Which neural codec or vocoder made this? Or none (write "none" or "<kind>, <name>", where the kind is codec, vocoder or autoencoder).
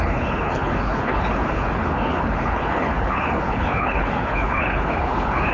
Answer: codec, HILCodec